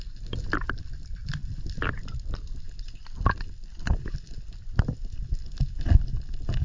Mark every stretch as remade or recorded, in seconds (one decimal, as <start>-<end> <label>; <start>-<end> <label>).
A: 0.0-6.6 recorded